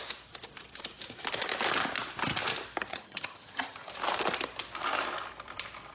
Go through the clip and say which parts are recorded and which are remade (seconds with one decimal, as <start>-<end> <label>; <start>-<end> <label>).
0.0-2.9 recorded; 2.9-3.9 remade; 3.9-5.9 recorded